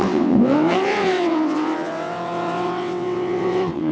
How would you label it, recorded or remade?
remade